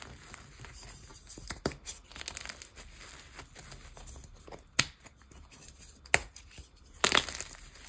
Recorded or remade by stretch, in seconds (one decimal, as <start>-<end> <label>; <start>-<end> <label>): 0.0-6.2 recorded; 6.2-6.8 remade; 6.8-7.9 recorded